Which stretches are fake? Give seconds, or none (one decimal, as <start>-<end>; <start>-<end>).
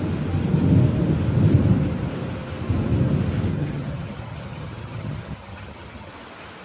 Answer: 3.5-6.1